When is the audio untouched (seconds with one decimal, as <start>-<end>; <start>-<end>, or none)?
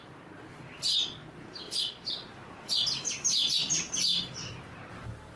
0.0-5.4